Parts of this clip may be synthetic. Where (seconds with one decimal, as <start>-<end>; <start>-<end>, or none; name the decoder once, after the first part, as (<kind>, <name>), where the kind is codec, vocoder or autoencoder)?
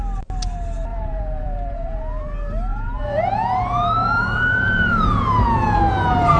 0.9-2.2 (vocoder, Vocos); 2.7-6.4